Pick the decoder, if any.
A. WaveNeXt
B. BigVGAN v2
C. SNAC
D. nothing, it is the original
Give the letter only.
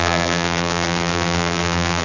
B